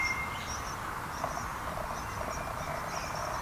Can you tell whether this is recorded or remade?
recorded